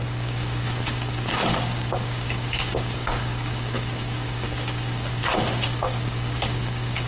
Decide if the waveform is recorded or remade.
remade